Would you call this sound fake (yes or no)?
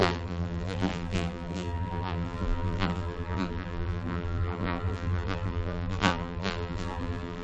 yes